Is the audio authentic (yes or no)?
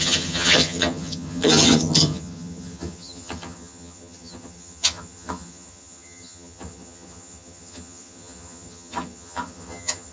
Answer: no